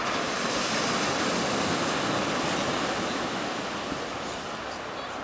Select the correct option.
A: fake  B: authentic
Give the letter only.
B